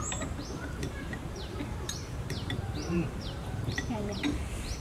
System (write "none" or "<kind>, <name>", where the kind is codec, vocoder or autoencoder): vocoder, BigVGAN v2